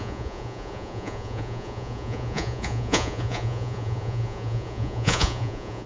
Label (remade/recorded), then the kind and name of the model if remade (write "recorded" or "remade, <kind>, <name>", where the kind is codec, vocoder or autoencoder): remade, vocoder, Vocos